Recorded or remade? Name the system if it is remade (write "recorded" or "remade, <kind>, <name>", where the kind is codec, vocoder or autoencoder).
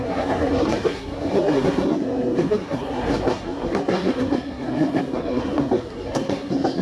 remade, codec, SNAC